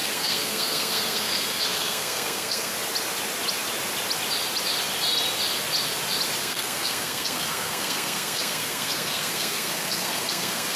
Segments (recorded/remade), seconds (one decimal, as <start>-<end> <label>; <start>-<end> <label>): 0.0-2.7 remade; 2.7-6.4 recorded; 6.4-10.8 remade